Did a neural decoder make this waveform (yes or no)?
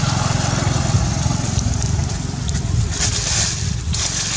no